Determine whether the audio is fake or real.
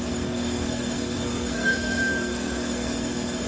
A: fake